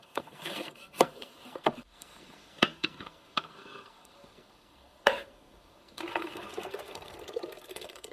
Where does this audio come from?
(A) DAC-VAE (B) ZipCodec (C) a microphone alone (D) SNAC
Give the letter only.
D